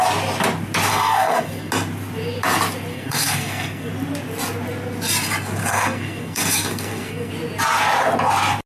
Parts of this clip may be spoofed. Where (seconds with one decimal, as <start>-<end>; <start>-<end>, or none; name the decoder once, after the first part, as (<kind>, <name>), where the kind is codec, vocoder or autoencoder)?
0.9-1.7 (codec, SNAC); 2.9-3.9; 5.6-7.3